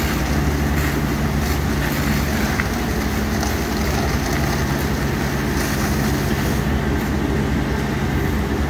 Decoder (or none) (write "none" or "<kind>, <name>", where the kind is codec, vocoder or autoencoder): none